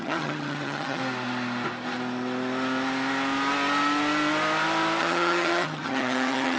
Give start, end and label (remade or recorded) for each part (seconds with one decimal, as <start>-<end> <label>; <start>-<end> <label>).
0.0-1.0 remade; 1.0-5.0 recorded; 5.0-6.6 remade